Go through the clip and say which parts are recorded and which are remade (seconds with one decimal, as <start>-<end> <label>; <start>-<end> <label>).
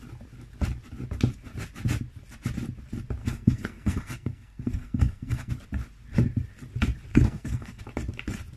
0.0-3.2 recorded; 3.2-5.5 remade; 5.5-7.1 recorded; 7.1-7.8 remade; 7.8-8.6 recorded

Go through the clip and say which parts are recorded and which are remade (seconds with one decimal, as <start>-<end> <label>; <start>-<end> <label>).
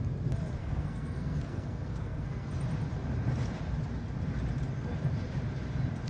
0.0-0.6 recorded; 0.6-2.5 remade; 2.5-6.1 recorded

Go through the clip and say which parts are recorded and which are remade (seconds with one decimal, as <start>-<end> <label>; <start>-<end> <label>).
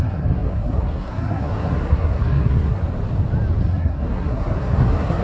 0.0-2.8 remade; 2.8-3.6 recorded; 3.6-5.2 remade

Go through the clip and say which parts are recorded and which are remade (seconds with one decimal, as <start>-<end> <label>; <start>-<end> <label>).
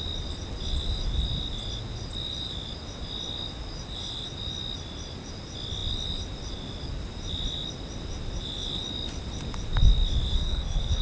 0.0-10.3 recorded; 10.3-11.0 remade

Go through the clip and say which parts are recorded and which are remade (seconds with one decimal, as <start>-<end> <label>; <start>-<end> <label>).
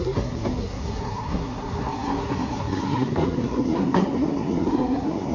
0.0-5.3 remade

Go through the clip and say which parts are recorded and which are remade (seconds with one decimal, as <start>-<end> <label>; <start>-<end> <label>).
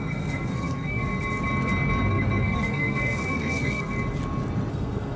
0.0-1.1 remade; 1.1-2.1 recorded; 2.1-3.9 remade; 3.9-4.7 recorded; 4.7-5.2 remade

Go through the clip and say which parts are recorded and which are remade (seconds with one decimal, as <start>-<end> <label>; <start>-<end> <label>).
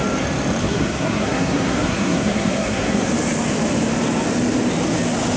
0.0-0.6 recorded; 0.6-3.1 remade; 3.1-5.4 recorded